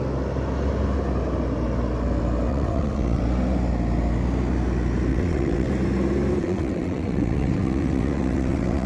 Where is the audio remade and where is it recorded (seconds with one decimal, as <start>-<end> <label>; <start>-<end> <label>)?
0.0-2.5 recorded; 2.5-3.2 remade; 3.2-5.1 recorded; 5.1-5.7 remade; 5.7-6.4 recorded; 6.4-8.9 remade